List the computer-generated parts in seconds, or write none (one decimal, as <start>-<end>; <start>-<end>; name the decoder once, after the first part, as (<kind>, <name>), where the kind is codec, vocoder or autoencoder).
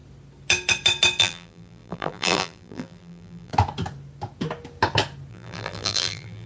1.2-3.5 (vocoder, BigVGAN v2); 5.3-6.5